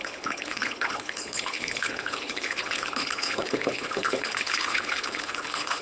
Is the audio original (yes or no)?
no